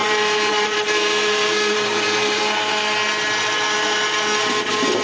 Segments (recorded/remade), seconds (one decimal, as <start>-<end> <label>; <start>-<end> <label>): 0.0-2.4 remade; 2.4-5.0 recorded